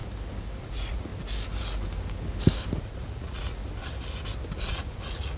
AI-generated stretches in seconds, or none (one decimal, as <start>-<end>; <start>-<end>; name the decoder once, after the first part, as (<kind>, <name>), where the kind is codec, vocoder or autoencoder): 0.6-1.1 (vocoder, Vocos); 2.8-3.6; 4.6-5.4